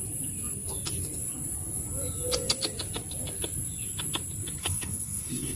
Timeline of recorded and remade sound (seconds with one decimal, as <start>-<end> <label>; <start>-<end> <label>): 0.0-4.6 recorded; 4.6-5.6 remade